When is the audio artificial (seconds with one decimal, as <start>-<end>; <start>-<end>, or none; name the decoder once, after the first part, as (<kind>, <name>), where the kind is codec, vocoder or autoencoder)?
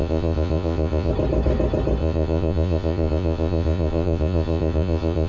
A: 0.0-1.1 (vocoder, Vocos); 2.0-5.3